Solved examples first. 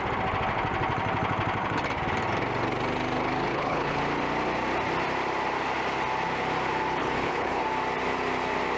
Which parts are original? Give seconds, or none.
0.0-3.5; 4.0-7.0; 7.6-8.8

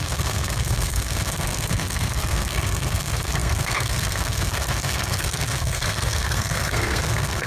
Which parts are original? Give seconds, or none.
none

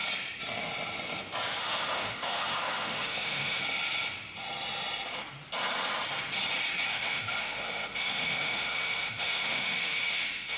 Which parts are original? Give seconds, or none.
0.0-1.6; 3.6-6.9

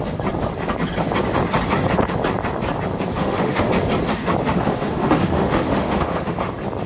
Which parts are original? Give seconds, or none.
0.0-3.1; 3.7-4.4; 6.4-6.9

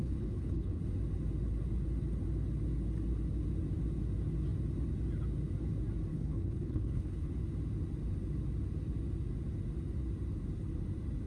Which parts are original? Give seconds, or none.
0.8-6.1; 7.3-11.3

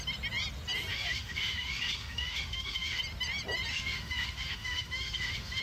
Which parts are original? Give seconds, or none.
0.0-0.9; 3.0-3.7

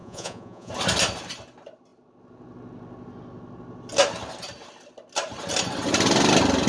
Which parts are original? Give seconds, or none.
0.7-6.7

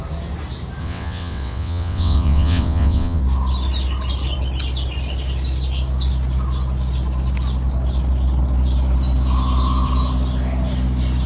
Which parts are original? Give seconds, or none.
0.0-0.8; 3.2-11.3